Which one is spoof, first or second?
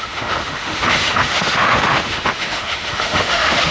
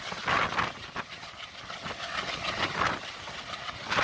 first